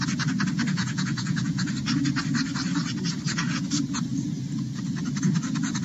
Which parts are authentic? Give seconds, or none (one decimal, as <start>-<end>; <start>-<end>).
0.0-0.7; 1.7-5.8